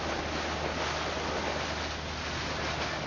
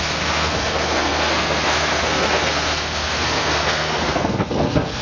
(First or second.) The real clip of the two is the first